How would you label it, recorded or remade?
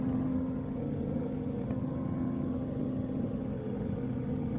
remade